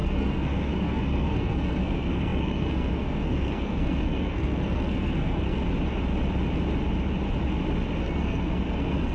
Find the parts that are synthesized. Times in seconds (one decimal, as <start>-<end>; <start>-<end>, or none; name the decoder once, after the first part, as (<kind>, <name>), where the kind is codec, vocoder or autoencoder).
0.0-5.6 (codec, SNAC); 8.0-9.1